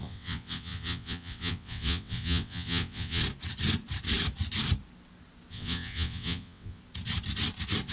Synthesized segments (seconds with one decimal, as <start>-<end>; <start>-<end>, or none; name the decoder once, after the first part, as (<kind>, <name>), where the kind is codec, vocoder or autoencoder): 0.0-3.2 (vocoder, WaveNeXt); 5.5-6.8